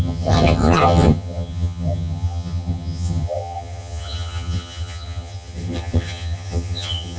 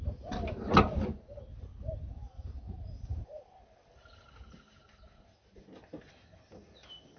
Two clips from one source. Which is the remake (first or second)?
first